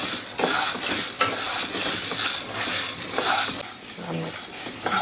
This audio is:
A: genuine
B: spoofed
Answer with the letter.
A